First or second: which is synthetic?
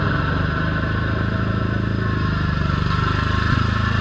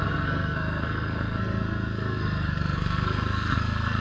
second